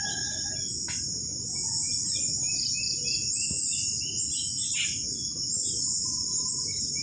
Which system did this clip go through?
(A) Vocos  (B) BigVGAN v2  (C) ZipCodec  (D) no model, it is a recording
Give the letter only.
D